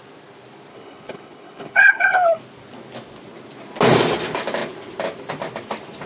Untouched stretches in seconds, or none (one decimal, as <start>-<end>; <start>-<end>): 0.0-0.7; 2.4-6.1